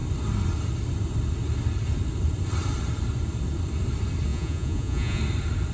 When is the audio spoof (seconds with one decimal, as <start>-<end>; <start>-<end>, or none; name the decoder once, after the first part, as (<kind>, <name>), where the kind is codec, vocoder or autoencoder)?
4.3-5.2 (vocoder, Vocos)